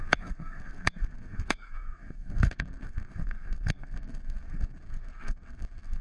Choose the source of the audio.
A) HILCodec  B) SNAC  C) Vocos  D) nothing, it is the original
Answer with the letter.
B